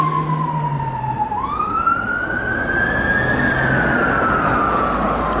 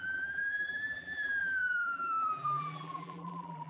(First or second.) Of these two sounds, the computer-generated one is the second